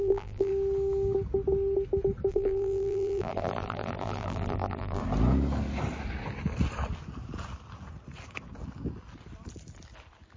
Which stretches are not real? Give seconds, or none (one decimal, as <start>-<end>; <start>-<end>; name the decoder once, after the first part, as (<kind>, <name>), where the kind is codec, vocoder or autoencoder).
0.0-0.5 (vocoder, BigVGAN v2); 2.3-5.0